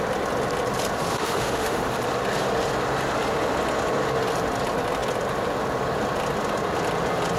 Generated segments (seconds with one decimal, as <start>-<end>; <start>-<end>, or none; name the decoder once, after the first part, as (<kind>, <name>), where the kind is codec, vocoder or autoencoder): 1.1-1.8 (autoencoder, DAC-VAE)